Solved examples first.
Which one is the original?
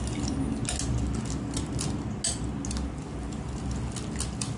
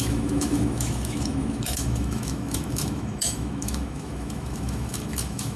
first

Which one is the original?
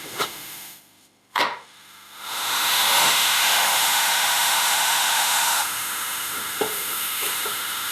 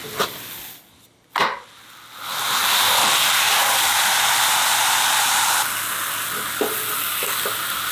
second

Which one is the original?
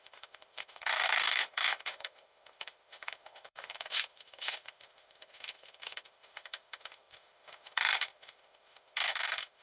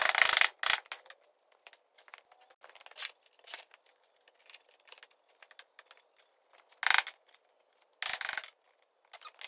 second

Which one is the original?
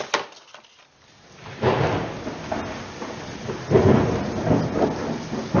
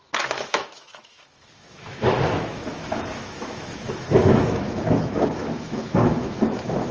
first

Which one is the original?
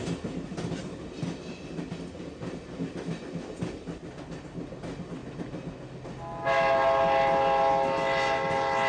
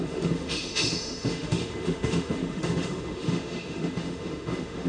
first